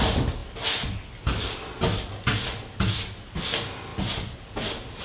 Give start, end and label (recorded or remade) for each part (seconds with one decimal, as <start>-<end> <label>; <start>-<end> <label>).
0.0-5.0 recorded